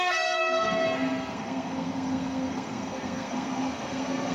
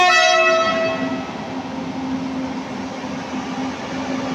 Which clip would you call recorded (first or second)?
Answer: second